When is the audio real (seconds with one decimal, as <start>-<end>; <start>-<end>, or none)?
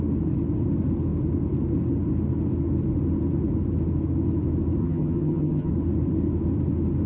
0.0-4.8; 5.7-7.1